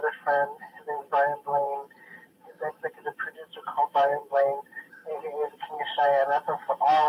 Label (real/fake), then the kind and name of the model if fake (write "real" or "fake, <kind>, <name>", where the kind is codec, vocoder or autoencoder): fake, vocoder, BigVGAN v2